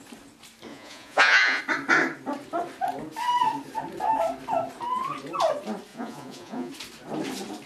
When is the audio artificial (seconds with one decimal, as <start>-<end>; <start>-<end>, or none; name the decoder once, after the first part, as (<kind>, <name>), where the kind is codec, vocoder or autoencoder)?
0.7-1.6 (vocoder, Vocos); 5.9-6.7